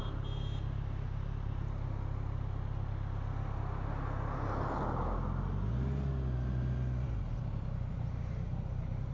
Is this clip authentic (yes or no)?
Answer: yes